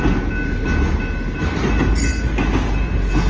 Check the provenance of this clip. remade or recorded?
recorded